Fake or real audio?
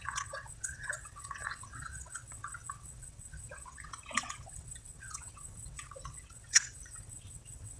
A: fake